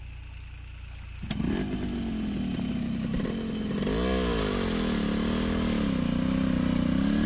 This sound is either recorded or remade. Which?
recorded